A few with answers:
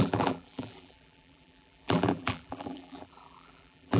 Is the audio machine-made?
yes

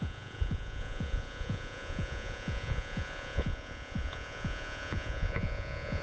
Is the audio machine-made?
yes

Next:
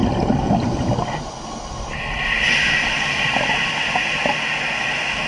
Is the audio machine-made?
no